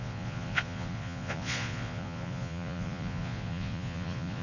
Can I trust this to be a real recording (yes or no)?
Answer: no